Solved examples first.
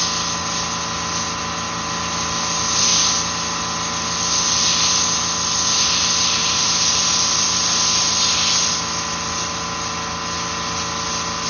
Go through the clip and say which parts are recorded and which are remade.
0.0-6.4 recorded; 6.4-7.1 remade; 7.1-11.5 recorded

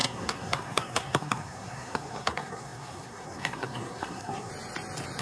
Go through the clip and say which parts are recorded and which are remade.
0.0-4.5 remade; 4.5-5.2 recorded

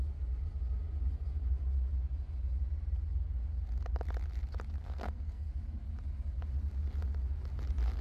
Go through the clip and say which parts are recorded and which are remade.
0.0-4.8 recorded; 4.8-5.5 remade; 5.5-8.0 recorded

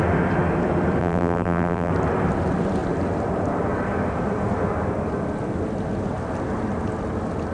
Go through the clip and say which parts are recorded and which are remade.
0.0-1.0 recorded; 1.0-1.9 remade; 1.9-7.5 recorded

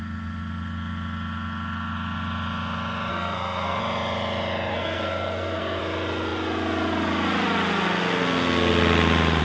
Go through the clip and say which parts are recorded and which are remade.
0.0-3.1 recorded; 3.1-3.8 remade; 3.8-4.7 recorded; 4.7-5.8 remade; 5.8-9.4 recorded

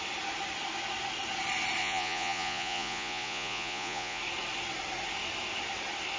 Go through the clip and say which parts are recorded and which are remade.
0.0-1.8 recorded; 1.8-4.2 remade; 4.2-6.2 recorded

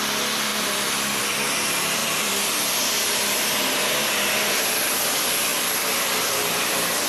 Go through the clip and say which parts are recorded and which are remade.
0.0-0.5 recorded; 0.5-1.2 remade; 1.2-2.0 recorded; 2.0-2.8 remade; 2.8-5.5 recorded; 5.5-7.1 remade